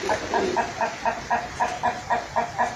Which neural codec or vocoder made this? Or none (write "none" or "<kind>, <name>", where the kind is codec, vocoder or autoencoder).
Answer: none